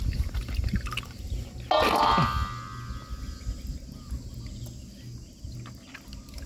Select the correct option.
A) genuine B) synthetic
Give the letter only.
A